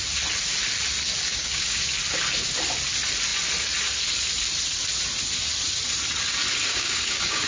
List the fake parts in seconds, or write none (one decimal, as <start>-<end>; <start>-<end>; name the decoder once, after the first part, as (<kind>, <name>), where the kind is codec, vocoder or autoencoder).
1.3-1.8 (codec, DAC); 6.7-7.5